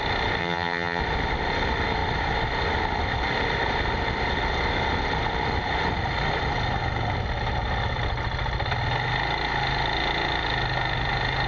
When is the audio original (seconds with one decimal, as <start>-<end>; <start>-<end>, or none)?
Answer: 0.0-0.4; 1.0-11.5